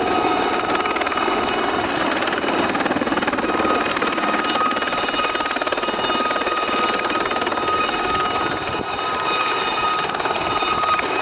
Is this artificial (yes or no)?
no